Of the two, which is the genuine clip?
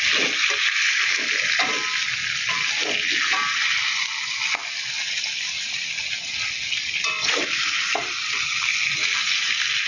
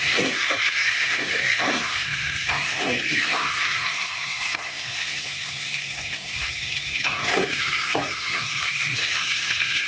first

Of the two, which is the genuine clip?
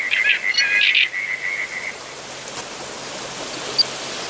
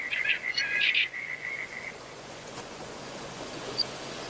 first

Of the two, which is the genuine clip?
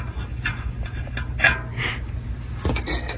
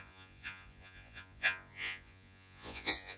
first